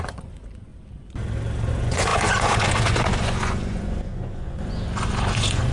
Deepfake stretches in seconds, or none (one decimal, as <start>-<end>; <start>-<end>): 0.0-0.7; 1.7-5.7